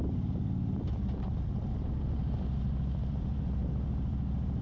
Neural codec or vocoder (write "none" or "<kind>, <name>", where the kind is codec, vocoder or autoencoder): vocoder, BigVGAN v2